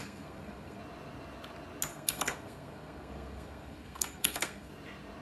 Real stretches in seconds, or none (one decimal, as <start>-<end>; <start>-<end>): 0.8-1.9; 4.7-5.2